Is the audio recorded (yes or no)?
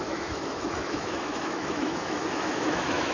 no